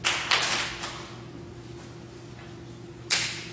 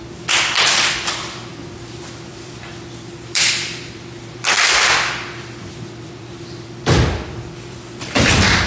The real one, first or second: first